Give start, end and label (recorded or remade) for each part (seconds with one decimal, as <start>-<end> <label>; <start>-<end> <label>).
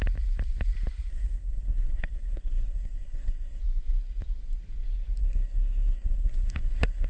0.0-1.1 recorded; 1.1-3.6 remade; 3.6-5.2 recorded; 5.2-7.1 remade